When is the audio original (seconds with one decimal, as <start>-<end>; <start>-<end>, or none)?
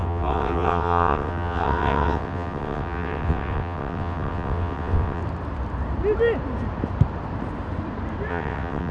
5.2-8.3